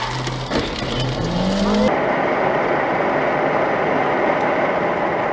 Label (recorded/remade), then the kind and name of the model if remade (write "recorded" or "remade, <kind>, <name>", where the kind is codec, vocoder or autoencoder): recorded